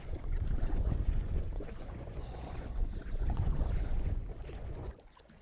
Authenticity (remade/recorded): remade